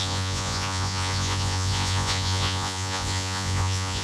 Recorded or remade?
remade